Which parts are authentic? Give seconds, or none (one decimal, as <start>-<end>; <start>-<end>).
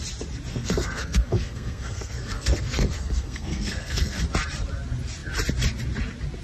0.0-0.5; 4.2-6.4